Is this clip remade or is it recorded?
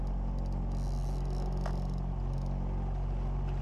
recorded